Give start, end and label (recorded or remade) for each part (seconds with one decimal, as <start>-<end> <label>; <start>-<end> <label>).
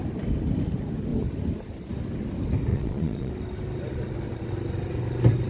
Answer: 0.0-2.7 recorded; 2.7-3.3 remade; 3.3-5.5 recorded